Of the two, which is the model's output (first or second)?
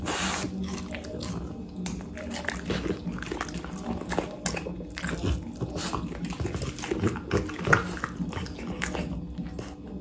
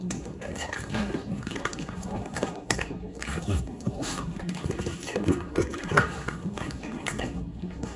second